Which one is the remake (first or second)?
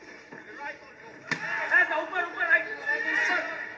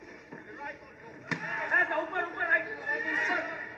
second